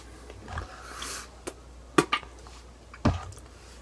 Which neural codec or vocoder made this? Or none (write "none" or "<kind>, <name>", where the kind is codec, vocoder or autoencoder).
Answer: none